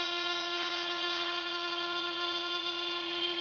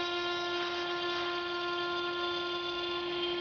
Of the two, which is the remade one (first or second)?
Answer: first